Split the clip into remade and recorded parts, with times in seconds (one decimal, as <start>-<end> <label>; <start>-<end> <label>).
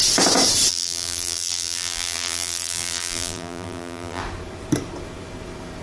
0.0-0.7 recorded; 0.7-4.2 remade; 4.2-5.8 recorded